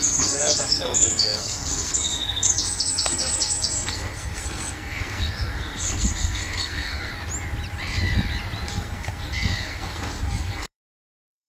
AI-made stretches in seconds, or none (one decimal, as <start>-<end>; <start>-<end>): 0.0-7.1; 8.7-11.5